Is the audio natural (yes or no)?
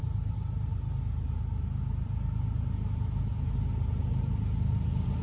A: yes